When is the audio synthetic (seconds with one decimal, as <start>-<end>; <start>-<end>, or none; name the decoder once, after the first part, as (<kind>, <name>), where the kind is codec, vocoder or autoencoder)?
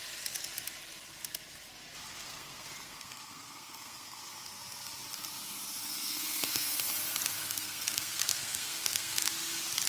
2.2-4.2 (codec, SNAC); 5.8-6.9; 7.4-9.3